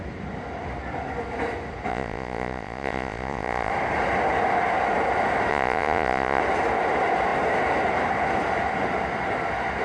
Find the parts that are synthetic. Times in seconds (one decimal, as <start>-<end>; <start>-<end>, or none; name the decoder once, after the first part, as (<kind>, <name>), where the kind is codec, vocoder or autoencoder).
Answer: 1.9-3.7 (vocoder, Vocos); 5.5-6.4